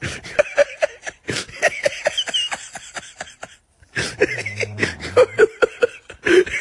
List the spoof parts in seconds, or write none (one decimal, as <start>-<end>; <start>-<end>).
none